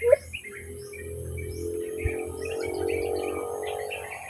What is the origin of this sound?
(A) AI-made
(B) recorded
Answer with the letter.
B